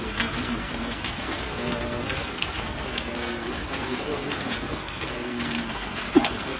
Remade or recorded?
remade